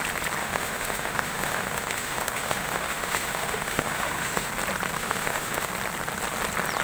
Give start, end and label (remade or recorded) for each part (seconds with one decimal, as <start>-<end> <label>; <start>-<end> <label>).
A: 0.0-0.4 recorded; 0.4-4.5 remade; 4.5-5.0 recorded; 5.0-5.7 remade; 5.7-6.8 recorded